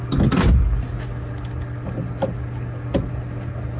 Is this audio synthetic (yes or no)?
no